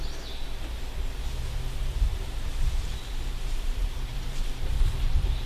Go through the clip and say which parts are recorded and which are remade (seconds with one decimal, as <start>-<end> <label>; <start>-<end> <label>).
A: 0.0-2.1 recorded; 2.1-5.5 remade